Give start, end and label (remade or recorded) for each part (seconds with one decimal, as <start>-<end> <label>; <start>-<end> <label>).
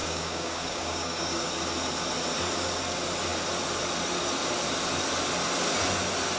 0.0-1.5 remade; 1.5-6.4 recorded